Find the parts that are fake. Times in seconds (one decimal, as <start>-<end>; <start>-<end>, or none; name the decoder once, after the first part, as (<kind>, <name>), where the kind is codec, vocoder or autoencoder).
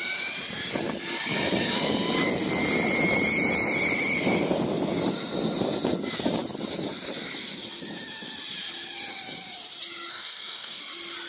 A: 10.1-10.8 (codec, DAC)